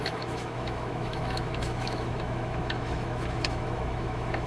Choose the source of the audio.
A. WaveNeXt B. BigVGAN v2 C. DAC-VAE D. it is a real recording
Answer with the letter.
C